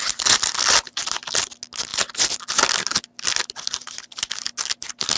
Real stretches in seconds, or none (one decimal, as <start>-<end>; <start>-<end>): 0.0-5.2